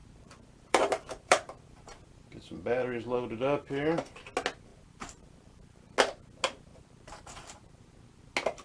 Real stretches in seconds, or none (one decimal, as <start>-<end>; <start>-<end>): 2.1-4.7; 5.9-6.7; 7.8-8.6